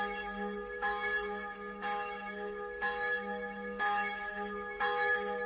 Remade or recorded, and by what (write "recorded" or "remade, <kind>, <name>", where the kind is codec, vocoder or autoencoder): remade, autoencoder, DAC-VAE